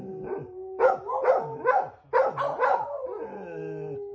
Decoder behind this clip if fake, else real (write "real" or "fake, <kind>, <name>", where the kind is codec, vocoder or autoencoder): real